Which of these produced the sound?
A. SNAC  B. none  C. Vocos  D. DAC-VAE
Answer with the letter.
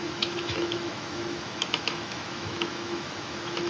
D